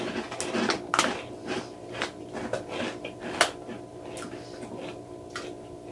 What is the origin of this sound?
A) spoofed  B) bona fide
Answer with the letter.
B